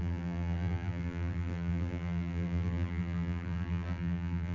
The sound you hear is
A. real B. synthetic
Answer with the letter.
B